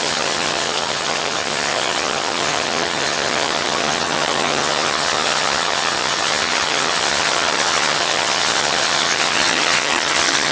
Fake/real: fake